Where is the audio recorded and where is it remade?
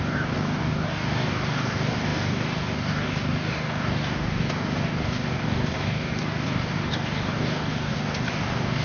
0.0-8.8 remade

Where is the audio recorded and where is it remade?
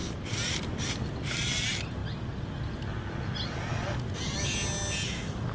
0.0-0.7 remade; 0.7-5.5 recorded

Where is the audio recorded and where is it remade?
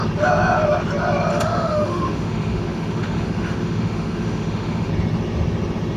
0.0-1.3 recorded; 1.3-4.9 remade; 4.9-6.0 recorded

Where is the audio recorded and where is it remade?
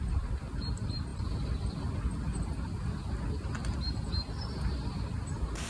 0.0-1.1 recorded; 1.1-1.9 remade; 1.9-5.7 recorded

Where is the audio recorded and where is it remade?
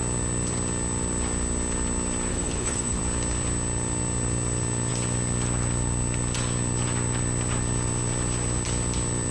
0.0-2.3 recorded; 2.3-3.0 remade; 3.0-9.3 recorded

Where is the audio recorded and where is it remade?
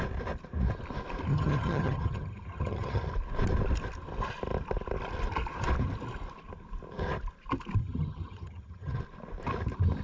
0.0-1.3 recorded; 1.3-3.0 remade; 3.0-7.8 recorded; 7.8-9.0 remade; 9.0-10.0 recorded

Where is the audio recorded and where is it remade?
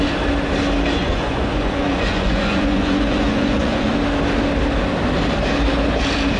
0.0-1.0 recorded; 1.0-3.9 remade; 3.9-6.4 recorded